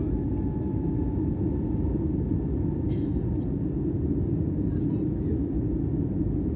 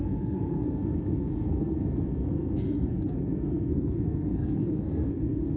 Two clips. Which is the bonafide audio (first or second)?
first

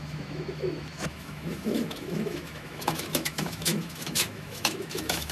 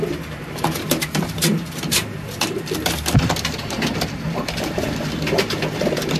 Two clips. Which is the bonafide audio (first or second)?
second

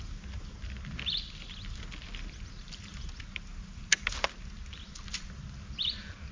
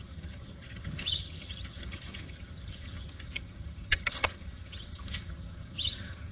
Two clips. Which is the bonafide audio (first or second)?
first